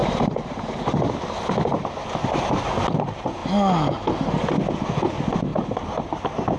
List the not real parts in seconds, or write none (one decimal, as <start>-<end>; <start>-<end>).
none